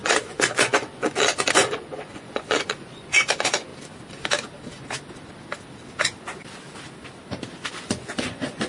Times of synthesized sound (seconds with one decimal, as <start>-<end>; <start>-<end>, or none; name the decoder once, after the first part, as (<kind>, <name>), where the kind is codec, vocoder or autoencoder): 0.0-3.7 (vocoder, Vocos); 7.7-8.7

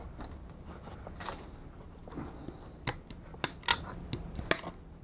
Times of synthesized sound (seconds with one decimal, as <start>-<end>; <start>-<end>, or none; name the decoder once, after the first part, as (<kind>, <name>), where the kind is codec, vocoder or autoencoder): none

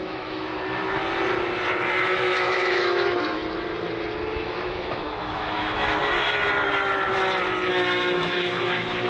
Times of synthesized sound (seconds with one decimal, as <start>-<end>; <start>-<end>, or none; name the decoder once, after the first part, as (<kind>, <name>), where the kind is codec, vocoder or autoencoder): 0.0-0.5 (autoencoder, DAC-VAE); 2.0-3.4; 4.4-6.0; 7.7-9.1

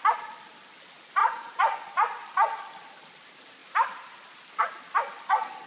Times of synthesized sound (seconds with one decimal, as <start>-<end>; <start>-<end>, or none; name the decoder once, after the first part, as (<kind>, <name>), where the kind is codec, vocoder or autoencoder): 1.2-1.9 (vocoder, Vocos)

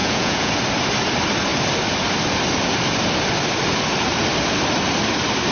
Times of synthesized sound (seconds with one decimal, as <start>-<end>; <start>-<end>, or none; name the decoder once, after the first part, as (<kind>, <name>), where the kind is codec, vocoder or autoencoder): 0.0-0.5 (vocoder, Vocos)

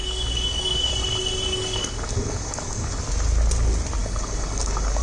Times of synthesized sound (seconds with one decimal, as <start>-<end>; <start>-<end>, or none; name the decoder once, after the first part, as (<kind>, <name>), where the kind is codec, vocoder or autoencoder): 0.0-0.9 (codec, DAC); 1.5-3.0; 4.0-5.0

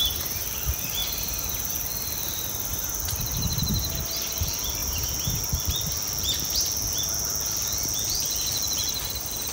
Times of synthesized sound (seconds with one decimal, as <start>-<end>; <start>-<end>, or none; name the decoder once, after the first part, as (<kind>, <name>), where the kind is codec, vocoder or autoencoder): 4.8-5.4 (vocoder, BigVGAN v2)